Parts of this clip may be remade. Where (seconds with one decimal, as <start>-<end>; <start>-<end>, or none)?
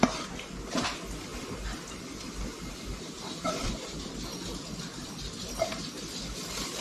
none